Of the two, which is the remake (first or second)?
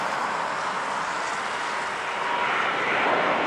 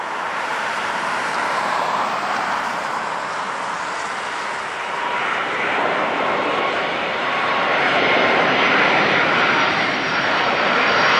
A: second